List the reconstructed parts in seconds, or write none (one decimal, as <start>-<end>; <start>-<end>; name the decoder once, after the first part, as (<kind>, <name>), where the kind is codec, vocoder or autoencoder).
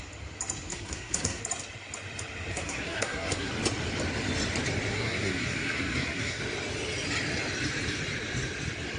0.7-1.4 (codec, SNAC); 2.5-3.5; 4.9-6.4